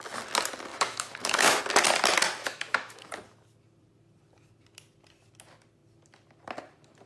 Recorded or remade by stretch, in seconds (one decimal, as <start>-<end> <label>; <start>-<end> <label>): 0.0-0.7 recorded; 0.7-1.6 remade; 1.6-2.4 recorded; 2.4-3.1 remade; 3.1-7.1 recorded